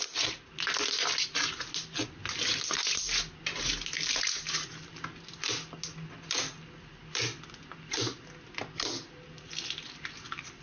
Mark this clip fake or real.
real